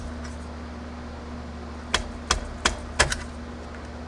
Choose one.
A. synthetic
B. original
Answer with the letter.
B